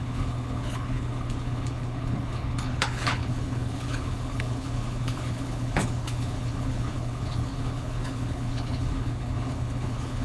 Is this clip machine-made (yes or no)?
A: yes